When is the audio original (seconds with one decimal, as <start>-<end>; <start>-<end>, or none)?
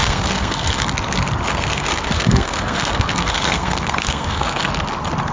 0.8-1.5; 4.7-5.3